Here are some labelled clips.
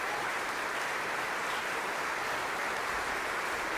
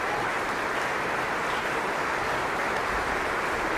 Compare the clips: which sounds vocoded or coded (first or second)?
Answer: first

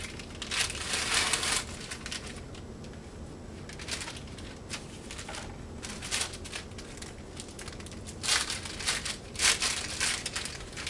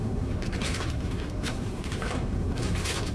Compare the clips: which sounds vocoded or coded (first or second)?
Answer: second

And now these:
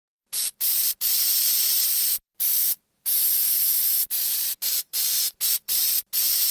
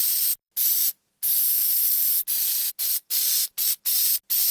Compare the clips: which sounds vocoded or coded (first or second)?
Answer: first